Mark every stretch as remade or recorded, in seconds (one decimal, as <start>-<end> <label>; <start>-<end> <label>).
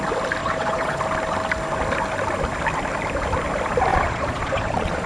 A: 0.0-0.4 recorded; 0.4-1.0 remade; 1.0-3.9 recorded; 3.9-5.1 remade